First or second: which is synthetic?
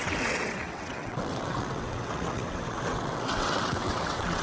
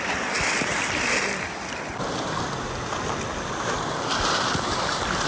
first